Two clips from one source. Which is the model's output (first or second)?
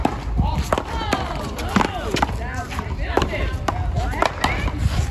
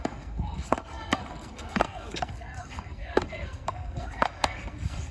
second